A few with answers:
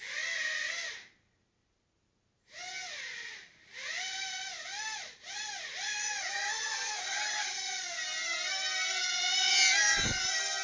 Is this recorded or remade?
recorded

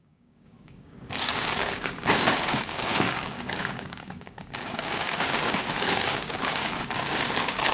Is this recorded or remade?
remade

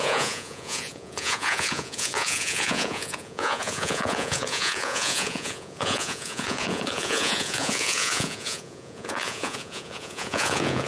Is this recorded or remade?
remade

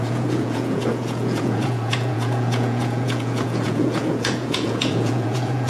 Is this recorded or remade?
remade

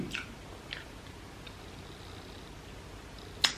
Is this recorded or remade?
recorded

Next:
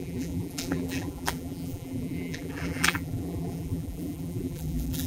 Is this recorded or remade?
remade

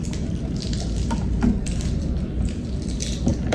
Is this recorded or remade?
recorded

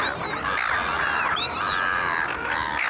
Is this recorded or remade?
recorded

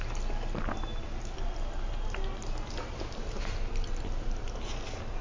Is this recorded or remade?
recorded